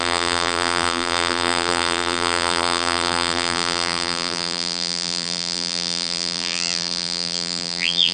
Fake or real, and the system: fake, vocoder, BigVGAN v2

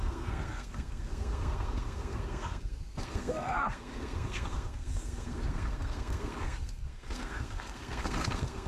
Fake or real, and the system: fake, codec, SNAC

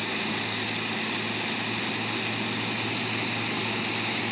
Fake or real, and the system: real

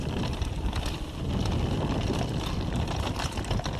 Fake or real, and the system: real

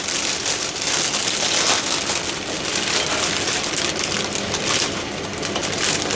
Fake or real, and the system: real